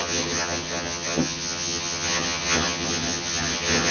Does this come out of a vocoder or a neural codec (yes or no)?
yes